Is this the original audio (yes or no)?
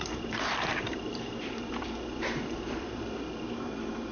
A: no